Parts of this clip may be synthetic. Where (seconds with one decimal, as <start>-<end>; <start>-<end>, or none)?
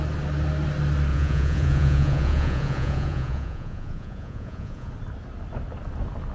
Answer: 1.1-4.9